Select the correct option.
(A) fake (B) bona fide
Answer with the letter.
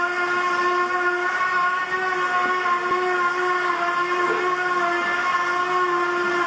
B